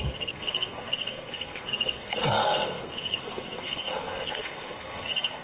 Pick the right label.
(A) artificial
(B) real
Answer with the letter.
A